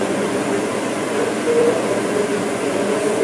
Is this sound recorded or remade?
remade